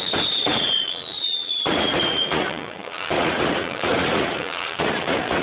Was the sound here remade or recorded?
remade